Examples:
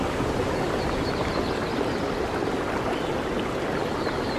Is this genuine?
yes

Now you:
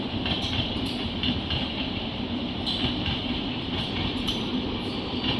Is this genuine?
no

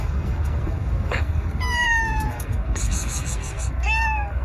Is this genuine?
no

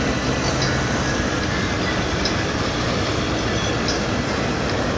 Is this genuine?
yes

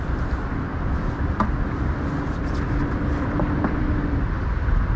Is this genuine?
yes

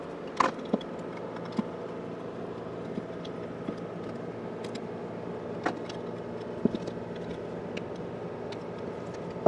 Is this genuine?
yes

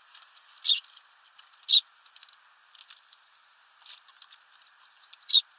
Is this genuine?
yes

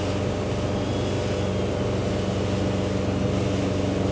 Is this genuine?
yes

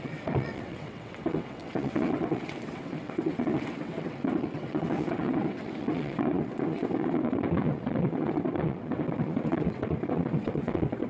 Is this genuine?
no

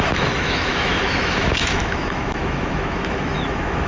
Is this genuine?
no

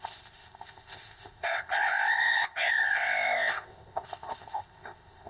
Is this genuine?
no